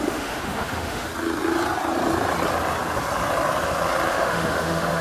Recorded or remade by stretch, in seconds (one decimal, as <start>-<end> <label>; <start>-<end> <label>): 0.0-1.1 remade; 1.1-4.1 recorded; 4.1-5.0 remade